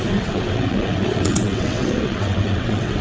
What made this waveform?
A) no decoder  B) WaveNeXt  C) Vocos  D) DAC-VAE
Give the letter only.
B